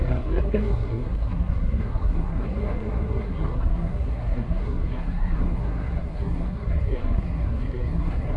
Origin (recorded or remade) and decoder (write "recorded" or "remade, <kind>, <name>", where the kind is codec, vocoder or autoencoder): remade, codec, SNAC